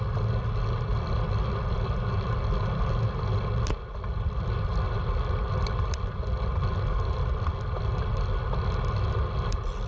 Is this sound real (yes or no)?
yes